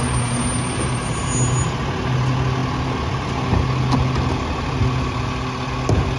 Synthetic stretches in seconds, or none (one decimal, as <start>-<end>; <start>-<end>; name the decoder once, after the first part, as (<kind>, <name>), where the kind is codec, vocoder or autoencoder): none